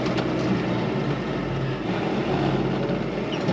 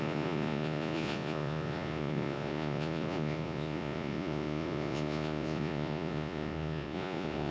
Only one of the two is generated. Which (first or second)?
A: second